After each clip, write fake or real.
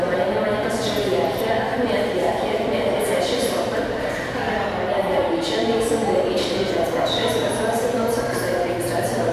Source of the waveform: fake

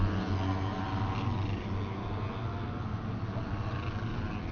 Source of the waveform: real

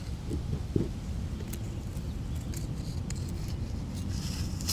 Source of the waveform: real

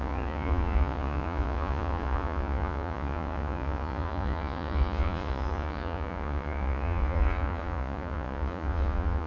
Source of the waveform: fake